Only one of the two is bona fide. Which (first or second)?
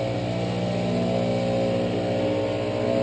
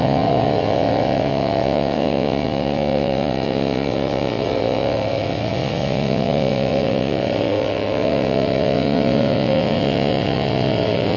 first